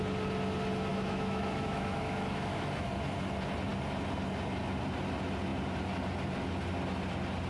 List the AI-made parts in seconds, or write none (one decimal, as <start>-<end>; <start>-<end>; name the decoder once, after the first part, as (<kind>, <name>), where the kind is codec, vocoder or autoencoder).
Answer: 0.9-2.9 (autoencoder, DAC-VAE)